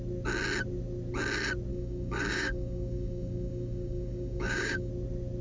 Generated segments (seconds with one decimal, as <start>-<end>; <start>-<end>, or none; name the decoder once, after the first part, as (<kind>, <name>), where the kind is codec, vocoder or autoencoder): 1.7-4.9 (codec, DAC)